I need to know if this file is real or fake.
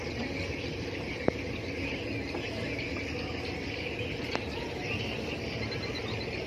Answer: real